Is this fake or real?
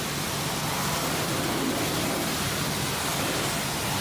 real